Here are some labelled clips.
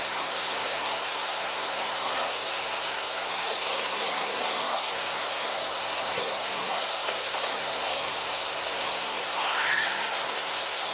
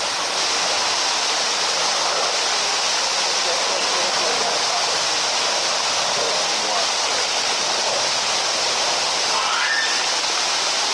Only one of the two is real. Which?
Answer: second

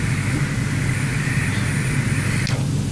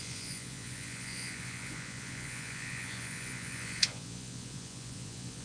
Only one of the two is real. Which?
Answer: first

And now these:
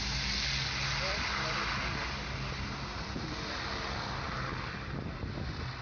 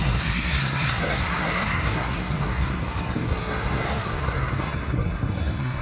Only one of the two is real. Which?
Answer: first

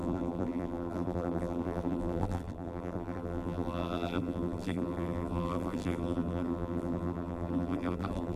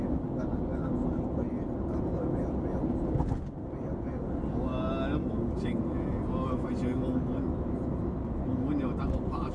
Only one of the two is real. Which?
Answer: second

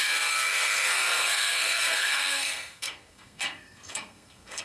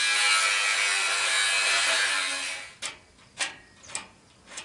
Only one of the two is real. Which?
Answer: second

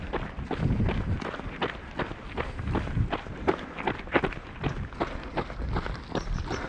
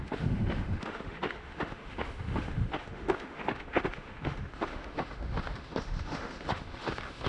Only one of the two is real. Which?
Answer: first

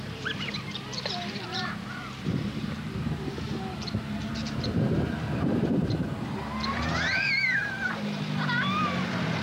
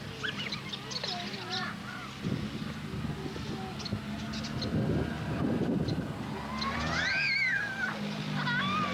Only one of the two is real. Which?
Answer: second